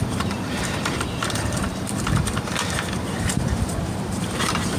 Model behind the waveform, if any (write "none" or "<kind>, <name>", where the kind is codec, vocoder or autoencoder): vocoder, BigVGAN v2